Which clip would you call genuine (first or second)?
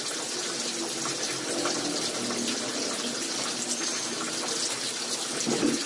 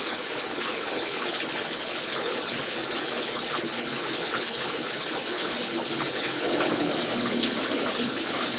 first